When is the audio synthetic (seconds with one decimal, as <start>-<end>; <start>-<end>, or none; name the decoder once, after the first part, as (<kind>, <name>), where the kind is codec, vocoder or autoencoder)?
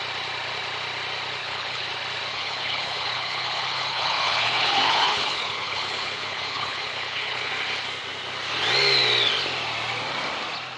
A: 1.4-1.9 (codec, HILCodec); 2.3-7.5